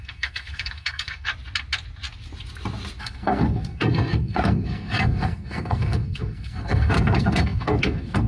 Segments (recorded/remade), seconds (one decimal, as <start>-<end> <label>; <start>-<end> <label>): 0.0-1.3 remade; 1.3-3.0 recorded; 3.0-8.3 remade